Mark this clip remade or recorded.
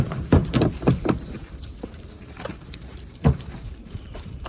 remade